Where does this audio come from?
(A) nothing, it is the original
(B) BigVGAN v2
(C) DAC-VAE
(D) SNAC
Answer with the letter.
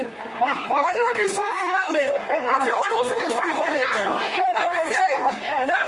D